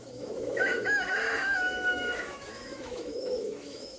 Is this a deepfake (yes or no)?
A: yes